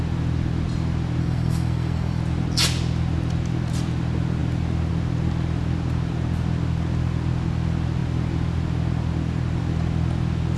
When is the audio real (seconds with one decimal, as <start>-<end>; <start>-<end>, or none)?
0.0-1.2; 2.2-10.6